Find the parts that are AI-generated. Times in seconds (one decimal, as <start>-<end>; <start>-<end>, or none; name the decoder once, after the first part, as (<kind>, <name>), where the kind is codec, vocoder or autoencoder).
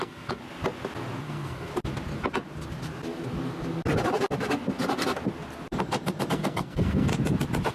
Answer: 0.0-0.4 (codec, SNAC); 1.2-1.7; 6.3-7.1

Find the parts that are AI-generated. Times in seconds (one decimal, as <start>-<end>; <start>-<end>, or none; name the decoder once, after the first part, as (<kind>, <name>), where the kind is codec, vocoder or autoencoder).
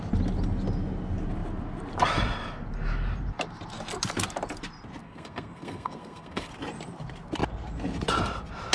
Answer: 5.0-6.5 (codec, SNAC)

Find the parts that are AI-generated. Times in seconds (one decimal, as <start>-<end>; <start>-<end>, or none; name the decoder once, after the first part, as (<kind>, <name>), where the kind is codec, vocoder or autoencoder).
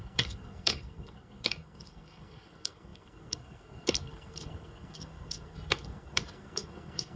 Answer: 0.0-7.2 (codec, SNAC)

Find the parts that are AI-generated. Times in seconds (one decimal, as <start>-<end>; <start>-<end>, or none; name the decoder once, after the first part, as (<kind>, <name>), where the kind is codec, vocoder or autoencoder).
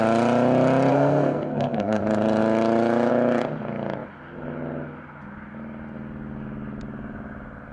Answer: 0.9-2.0 (codec, SNAC)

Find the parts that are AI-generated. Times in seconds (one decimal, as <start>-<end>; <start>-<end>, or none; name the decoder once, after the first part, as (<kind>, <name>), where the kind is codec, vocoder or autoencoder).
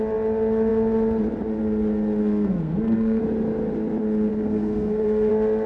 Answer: 2.2-3.2 (codec, SNAC); 4.3-5.3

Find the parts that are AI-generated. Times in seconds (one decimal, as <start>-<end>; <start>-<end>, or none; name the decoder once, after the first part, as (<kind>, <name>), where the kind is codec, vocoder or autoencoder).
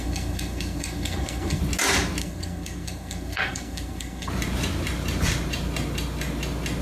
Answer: 0.0-1.6 (codec, SNAC); 2.2-4.3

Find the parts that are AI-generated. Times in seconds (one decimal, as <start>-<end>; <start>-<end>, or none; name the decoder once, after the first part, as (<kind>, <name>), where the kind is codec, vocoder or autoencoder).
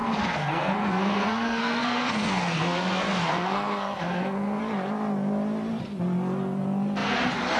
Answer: 0.0-4.6 (codec, SNAC)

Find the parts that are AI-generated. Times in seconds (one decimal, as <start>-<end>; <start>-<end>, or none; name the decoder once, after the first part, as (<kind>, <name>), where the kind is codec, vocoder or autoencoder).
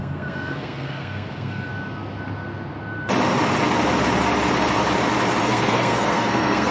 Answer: 0.0-1.7 (codec, SNAC); 5.4-6.7